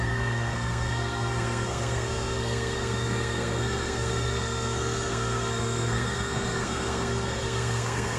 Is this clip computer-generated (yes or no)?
yes